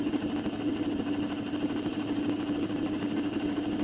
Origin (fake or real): real